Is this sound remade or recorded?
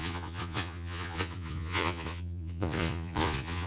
remade